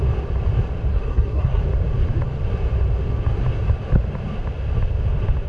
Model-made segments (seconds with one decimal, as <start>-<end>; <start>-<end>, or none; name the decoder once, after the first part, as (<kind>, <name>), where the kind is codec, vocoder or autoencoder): 0.9-1.6 (codec, SNAC)